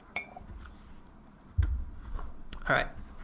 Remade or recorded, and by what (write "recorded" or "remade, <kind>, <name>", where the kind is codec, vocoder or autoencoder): remade, vocoder, BigVGAN v2